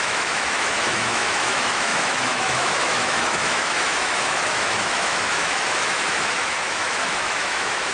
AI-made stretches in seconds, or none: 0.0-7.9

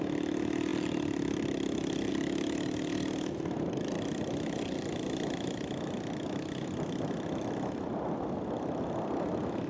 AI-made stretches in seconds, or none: none

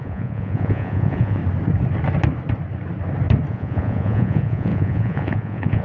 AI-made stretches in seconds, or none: 0.0-1.4; 3.5-5.8

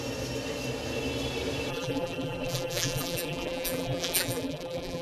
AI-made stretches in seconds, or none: 1.7-5.0

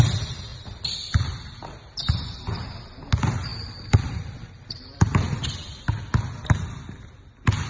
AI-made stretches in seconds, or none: 0.5-1.1; 3.5-5.8

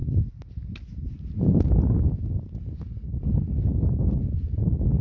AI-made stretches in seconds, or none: none